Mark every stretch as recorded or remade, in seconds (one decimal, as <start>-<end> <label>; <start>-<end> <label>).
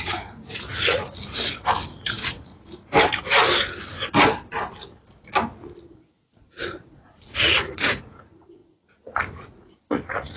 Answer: 0.0-1.0 remade; 1.0-2.0 recorded; 2.0-2.5 remade; 2.5-6.2 recorded; 6.2-10.4 remade